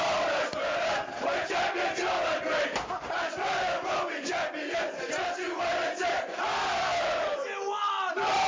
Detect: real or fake real